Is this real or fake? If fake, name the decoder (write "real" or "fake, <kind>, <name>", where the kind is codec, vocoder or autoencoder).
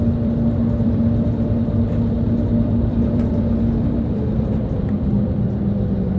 fake, vocoder, BigVGAN v2